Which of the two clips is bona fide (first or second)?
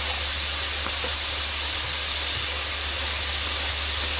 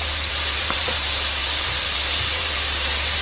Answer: first